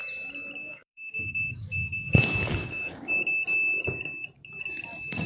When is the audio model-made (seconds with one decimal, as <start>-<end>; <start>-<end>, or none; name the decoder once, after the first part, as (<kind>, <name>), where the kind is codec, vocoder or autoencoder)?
0.6-3.1 (codec, DAC)